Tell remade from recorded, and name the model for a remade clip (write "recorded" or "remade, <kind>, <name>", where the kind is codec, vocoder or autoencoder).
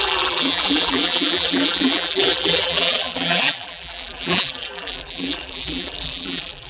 remade, vocoder, BigVGAN v2